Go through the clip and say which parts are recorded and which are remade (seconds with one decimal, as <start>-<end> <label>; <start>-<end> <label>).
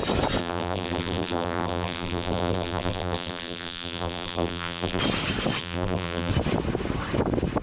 0.0-0.4 recorded; 0.4-5.0 remade; 5.0-5.6 recorded; 5.6-6.3 remade; 6.3-7.6 recorded